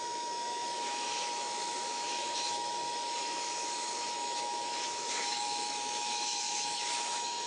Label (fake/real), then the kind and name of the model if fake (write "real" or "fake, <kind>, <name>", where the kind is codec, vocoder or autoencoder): fake, autoencoder, DAC-VAE